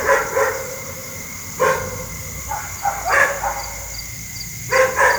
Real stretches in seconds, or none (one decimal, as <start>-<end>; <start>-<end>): 1.0-4.1